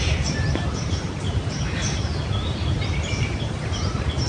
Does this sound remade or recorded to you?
remade